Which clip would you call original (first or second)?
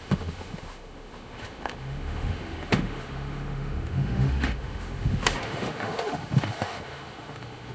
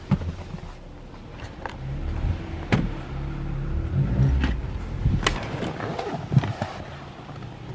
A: second